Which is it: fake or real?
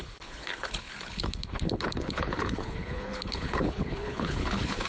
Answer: fake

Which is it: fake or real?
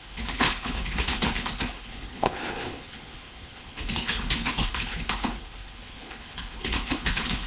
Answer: fake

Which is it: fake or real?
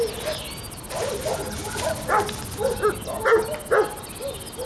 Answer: real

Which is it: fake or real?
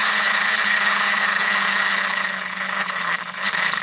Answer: fake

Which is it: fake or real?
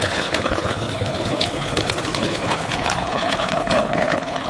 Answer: fake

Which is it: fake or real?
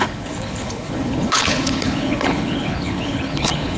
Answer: fake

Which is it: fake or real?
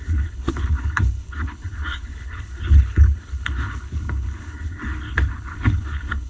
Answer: fake